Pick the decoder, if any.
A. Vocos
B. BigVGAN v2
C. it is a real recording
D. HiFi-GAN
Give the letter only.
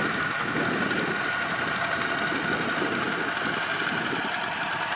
C